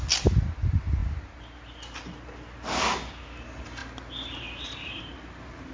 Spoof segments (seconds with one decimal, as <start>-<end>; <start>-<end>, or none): none